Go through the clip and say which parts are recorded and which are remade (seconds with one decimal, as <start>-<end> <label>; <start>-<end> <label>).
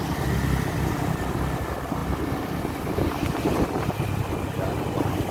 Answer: 0.0-5.3 recorded